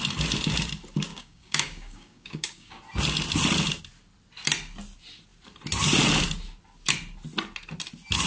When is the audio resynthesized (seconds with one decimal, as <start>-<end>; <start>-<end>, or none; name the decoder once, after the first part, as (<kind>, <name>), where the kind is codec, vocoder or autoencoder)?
1.1-2.8 (codec, DAC)